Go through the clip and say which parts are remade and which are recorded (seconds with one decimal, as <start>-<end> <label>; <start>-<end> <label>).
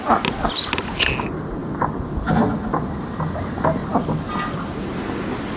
0.0-5.6 recorded